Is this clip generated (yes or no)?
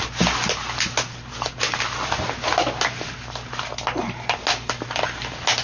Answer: no